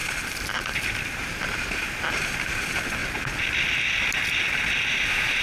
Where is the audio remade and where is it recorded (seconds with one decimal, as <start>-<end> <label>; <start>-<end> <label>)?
0.0-2.1 recorded; 2.1-3.0 remade; 3.0-4.9 recorded; 4.9-5.4 remade